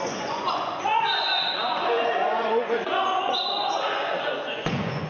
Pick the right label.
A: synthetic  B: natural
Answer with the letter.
A